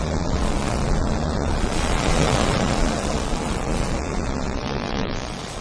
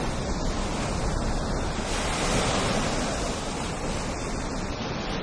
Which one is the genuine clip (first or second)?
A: second